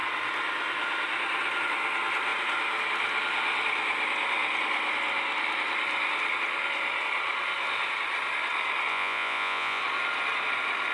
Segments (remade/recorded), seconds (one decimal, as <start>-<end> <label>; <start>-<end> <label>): 0.0-8.9 recorded; 8.9-9.8 remade; 9.8-10.9 recorded